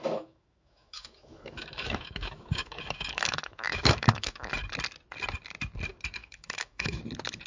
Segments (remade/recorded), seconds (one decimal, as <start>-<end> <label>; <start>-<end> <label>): 0.0-4.5 remade; 4.5-6.2 recorded; 6.2-7.0 remade; 7.0-7.5 recorded